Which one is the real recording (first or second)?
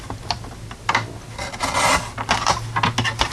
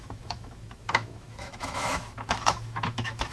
first